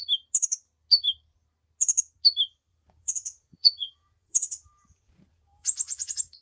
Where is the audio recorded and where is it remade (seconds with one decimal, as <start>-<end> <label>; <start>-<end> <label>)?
0.0-2.7 recorded; 2.7-6.4 remade

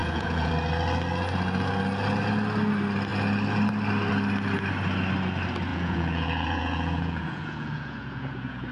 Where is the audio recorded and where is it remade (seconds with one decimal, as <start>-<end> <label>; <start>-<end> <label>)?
0.0-0.5 remade; 0.5-5.7 recorded; 5.7-8.7 remade

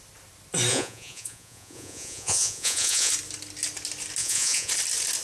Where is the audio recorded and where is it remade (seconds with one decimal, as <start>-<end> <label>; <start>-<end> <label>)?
0.0-0.7 recorded; 0.7-3.1 remade; 3.1-4.2 recorded; 4.2-4.7 remade; 4.7-5.2 recorded

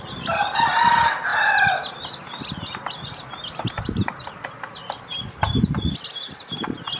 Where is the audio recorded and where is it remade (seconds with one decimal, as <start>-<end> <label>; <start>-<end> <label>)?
0.0-7.0 recorded